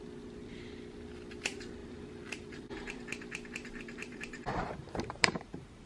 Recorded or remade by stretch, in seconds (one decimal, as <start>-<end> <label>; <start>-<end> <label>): 0.0-1.8 recorded; 1.8-3.0 remade; 3.0-3.6 recorded; 3.6-5.9 remade